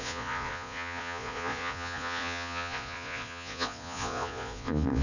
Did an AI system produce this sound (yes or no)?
yes